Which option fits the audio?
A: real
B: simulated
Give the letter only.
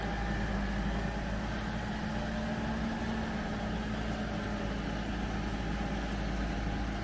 A